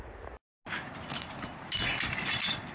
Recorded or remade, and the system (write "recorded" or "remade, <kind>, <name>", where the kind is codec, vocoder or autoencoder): recorded